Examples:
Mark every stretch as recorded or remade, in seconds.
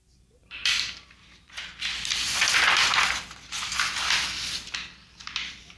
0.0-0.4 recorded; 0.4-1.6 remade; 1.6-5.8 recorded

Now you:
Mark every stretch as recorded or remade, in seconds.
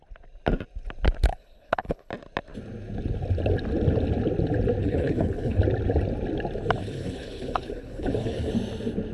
0.0-1.3 recorded; 1.3-2.1 remade; 2.1-4.8 recorded; 4.8-5.6 remade; 5.6-6.8 recorded; 6.8-8.5 remade; 8.5-9.1 recorded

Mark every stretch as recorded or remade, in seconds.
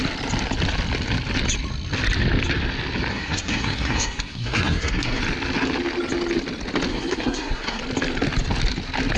0.0-3.1 recorded; 3.1-5.2 remade; 5.2-6.9 recorded; 6.9-7.8 remade; 7.8-9.2 recorded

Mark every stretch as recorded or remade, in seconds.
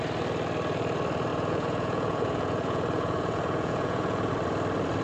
0.0-1.3 recorded; 1.3-4.3 remade; 4.3-5.0 recorded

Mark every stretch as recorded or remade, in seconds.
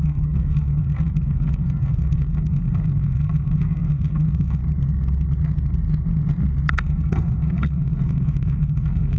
0.0-4.6 remade; 4.6-6.7 recorded; 6.7-9.2 remade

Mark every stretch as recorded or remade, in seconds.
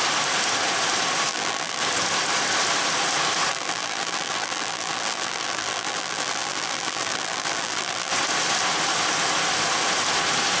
0.0-1.3 recorded; 1.3-1.8 remade; 1.8-3.5 recorded; 3.5-8.1 remade; 8.1-10.6 recorded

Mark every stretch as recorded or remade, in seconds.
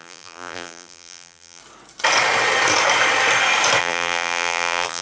0.0-1.6 remade; 1.6-3.8 recorded; 3.8-5.0 remade